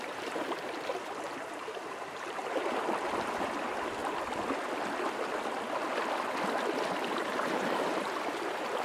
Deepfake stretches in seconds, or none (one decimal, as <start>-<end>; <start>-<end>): 0.0-4.0; 7.1-8.8